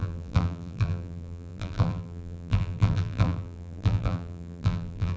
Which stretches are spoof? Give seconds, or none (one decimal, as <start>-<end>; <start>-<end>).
0.0-5.2

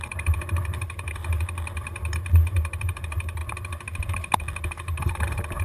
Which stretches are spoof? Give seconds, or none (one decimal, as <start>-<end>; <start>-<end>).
0.0-3.4; 5.0-5.6

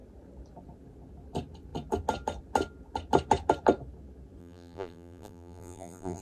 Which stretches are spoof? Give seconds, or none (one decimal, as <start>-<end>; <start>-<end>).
4.4-6.2

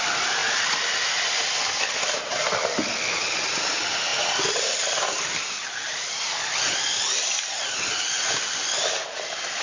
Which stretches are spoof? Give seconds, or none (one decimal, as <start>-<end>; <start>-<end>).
0.0-9.6